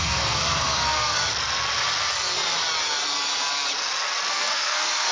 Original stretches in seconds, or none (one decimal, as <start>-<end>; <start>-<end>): 1.2-4.3